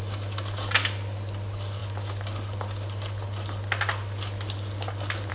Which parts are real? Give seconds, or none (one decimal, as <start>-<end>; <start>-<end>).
0.0-5.3